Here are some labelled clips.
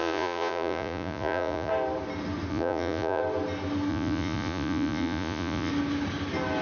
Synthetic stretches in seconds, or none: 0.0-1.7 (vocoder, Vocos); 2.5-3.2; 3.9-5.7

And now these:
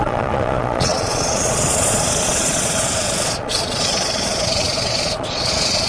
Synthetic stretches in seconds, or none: 0.0-5.9 (vocoder, Vocos)

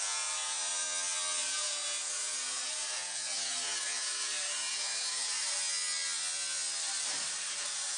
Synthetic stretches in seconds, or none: 0.0-0.7 (vocoder, Vocos); 1.4-5.6; 7.6-8.0